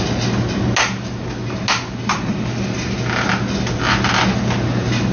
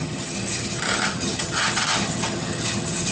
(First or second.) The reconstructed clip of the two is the second